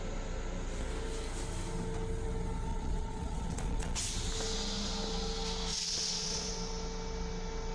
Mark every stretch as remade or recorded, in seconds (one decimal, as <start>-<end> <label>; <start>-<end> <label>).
0.0-2.7 recorded; 2.7-4.0 remade; 4.0-5.7 recorded; 5.7-6.5 remade; 6.5-7.7 recorded